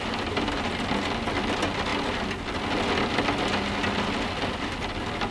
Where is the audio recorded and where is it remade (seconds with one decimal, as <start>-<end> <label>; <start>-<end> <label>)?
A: 0.0-5.3 recorded